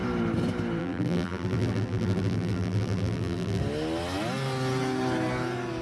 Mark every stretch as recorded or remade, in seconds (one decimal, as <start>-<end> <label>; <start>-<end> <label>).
0.0-0.8 recorded; 0.8-3.6 remade; 3.6-5.8 recorded